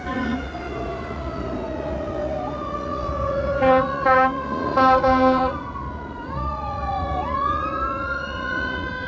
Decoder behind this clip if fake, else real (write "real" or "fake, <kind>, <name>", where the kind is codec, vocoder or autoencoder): fake, vocoder, Vocos